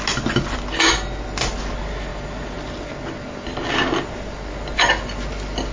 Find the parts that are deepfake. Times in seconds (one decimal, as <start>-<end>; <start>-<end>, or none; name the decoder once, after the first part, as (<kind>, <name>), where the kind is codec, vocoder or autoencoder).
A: none